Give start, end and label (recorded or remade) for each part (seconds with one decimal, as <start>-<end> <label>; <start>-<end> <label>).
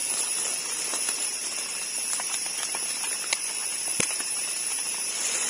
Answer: 0.0-3.3 recorded; 3.3-3.7 remade; 3.7-5.1 recorded; 5.1-5.5 remade